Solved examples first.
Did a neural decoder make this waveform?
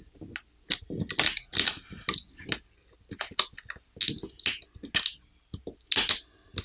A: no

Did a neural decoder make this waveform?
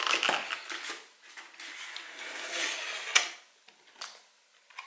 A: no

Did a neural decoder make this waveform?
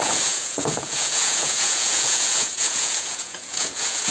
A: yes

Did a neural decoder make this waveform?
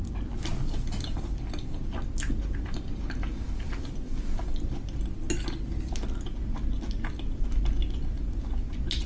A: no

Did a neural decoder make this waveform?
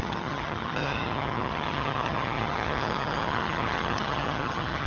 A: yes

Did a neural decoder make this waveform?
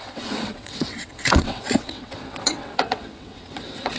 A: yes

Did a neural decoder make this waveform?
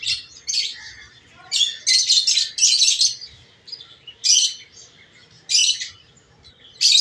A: no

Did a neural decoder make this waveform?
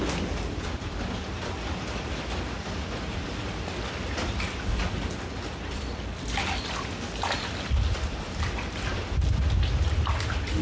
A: no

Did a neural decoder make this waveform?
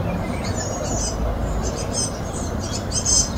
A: yes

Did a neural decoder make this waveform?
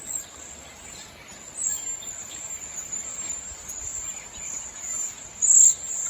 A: no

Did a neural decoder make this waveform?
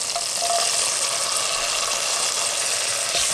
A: no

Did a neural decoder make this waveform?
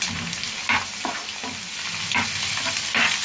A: no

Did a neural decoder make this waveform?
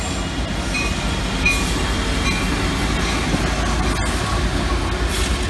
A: no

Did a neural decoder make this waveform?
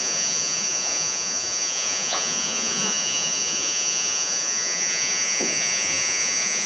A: yes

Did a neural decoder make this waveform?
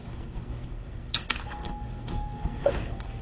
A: yes